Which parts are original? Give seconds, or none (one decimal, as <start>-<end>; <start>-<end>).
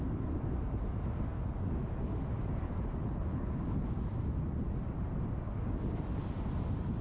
0.0-3.0; 3.5-7.0